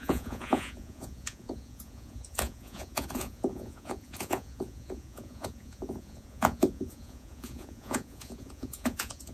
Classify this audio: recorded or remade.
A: remade